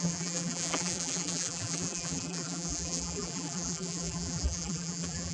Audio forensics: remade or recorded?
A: remade